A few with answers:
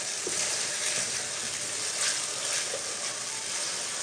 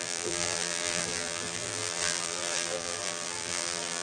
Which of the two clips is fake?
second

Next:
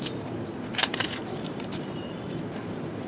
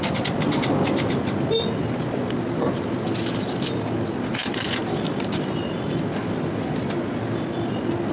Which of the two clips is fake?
first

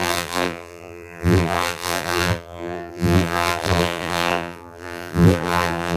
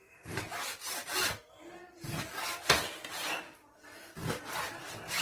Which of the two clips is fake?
first